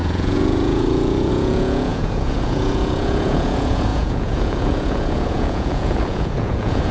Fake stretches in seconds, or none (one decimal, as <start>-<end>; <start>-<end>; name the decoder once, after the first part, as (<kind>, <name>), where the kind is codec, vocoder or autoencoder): 0.0-6.9 (vocoder, Vocos)